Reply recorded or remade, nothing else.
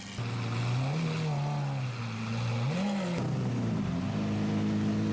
recorded